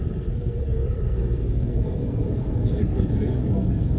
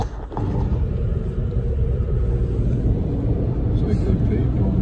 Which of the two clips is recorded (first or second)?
second